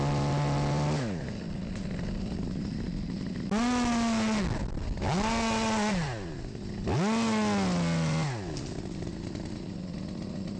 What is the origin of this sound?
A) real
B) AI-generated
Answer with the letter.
A